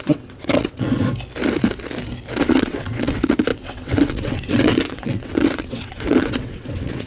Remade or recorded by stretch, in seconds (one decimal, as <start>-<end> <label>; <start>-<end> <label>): 0.0-1.0 remade; 1.0-2.4 recorded; 2.4-7.1 remade

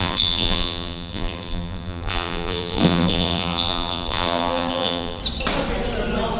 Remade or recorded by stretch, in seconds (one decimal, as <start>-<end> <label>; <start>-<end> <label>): 0.0-5.2 remade; 5.2-6.4 recorded

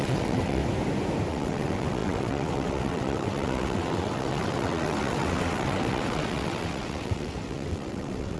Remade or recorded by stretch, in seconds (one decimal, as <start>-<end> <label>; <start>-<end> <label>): 0.0-0.6 remade; 0.6-1.3 recorded; 1.3-8.4 remade

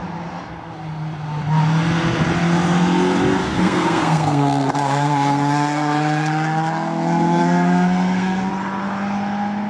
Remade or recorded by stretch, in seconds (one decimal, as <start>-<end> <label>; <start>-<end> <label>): 0.0-3.4 recorded; 3.4-8.5 remade; 8.5-9.7 recorded

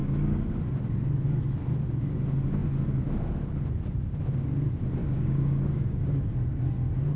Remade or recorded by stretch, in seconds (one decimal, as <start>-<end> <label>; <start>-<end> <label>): 0.0-0.5 remade; 0.5-5.0 recorded; 5.0-6.3 remade; 6.3-7.2 recorded